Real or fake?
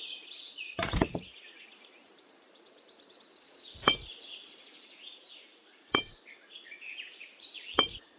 fake